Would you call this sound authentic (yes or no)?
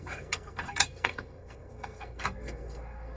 no